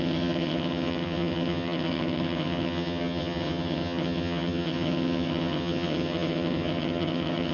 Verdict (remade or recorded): remade